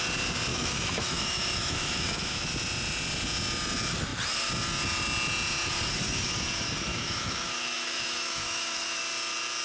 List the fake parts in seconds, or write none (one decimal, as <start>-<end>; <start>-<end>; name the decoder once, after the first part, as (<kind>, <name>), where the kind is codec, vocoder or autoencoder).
0.5-2.5 (autoencoder, DAC-VAE); 6.9-9.0